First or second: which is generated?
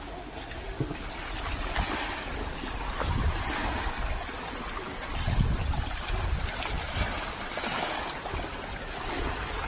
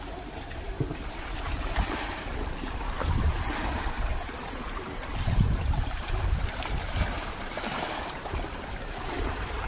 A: second